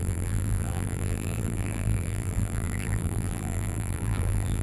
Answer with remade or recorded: remade